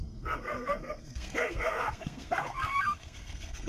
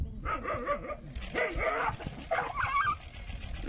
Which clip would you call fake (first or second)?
first